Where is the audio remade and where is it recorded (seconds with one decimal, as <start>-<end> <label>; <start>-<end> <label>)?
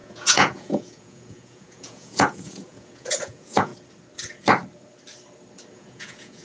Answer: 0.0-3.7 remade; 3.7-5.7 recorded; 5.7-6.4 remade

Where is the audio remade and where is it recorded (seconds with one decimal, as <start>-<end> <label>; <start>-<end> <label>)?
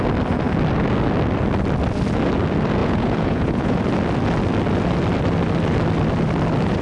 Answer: 0.0-2.8 recorded; 2.8-3.8 remade; 3.8-6.8 recorded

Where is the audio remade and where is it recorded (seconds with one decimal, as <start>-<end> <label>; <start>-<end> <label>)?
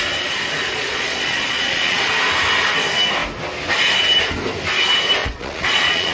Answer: 0.0-0.7 recorded; 0.7-2.1 remade; 2.1-5.2 recorded; 5.2-6.1 remade